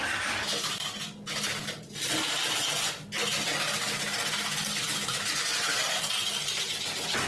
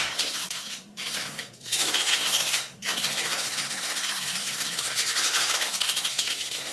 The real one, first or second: first